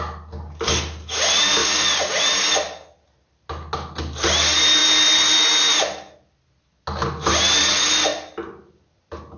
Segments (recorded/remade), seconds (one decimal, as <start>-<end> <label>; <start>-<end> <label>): 0.0-9.4 recorded